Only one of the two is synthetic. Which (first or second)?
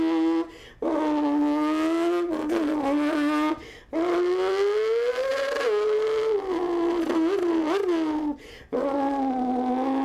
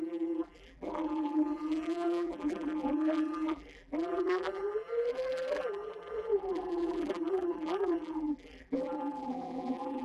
second